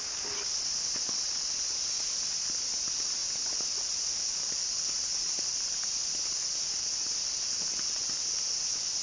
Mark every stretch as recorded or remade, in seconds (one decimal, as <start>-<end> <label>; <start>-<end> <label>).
0.0-9.0 recorded